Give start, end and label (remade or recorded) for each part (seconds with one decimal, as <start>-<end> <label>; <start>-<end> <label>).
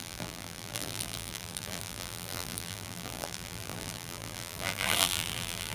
0.0-5.7 remade